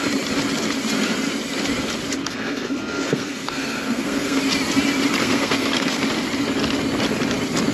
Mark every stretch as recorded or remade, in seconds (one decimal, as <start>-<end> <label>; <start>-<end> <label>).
0.0-2.2 recorded; 2.2-4.4 remade; 4.4-5.2 recorded; 5.2-6.0 remade; 6.0-7.7 recorded